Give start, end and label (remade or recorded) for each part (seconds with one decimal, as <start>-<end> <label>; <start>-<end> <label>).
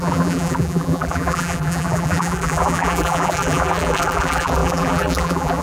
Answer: 0.0-5.6 remade